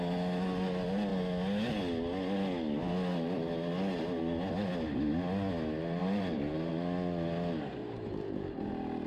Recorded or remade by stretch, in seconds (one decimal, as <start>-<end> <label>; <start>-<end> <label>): 0.0-6.0 recorded; 6.0-6.7 remade; 6.7-7.8 recorded; 7.8-8.7 remade; 8.7-9.1 recorded